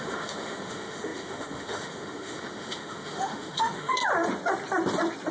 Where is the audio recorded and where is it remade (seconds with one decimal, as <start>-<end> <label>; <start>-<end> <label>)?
0.0-4.0 remade; 4.0-5.3 recorded